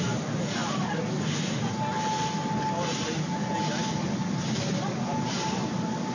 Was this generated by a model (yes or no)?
no